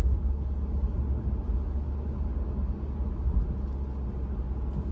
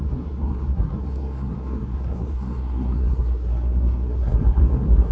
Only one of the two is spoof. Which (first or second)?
second